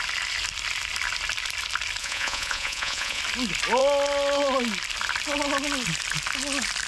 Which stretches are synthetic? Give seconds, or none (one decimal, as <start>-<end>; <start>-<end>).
2.0-3.2